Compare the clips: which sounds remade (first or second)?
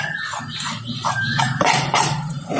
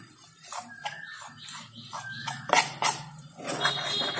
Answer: first